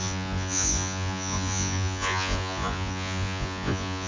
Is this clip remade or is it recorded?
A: remade